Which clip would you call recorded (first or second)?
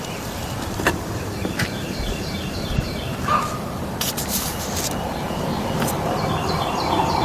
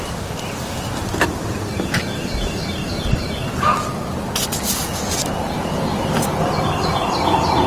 second